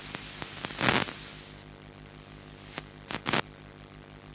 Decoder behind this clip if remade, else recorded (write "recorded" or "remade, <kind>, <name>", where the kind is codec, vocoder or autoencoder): recorded